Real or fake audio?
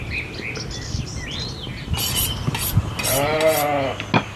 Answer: real